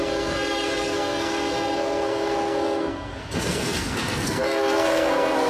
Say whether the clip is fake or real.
fake